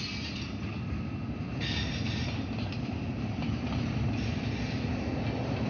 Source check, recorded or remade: recorded